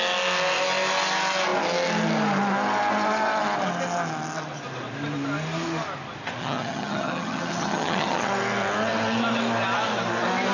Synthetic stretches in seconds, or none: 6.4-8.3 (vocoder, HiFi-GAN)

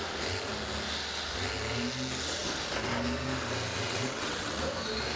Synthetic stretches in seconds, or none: 3.7-4.6 (vocoder, WaveNeXt)

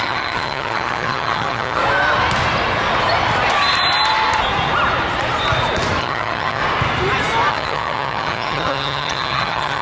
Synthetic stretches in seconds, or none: 0.0-1.8 (vocoder, HiFi-GAN); 6.0-6.6; 7.5-9.8

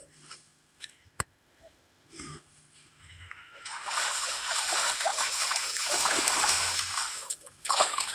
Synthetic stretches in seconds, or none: 0.0-8.1 (autoencoder, DAC-VAE)

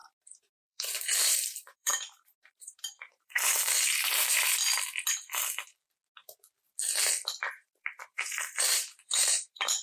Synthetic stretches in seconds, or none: 0.0-4.6 (vocoder, BigVGAN v2); 7.5-9.8

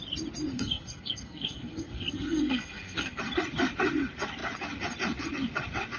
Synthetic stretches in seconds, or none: 0.5-3.2 (codec, SNAC)

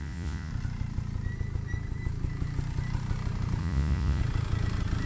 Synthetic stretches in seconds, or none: 0.0-0.5 (vocoder, Vocos); 3.6-4.2